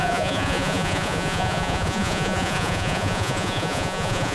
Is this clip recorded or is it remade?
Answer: remade